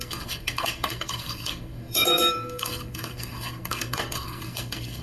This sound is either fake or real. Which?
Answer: fake